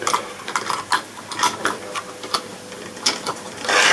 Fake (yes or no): no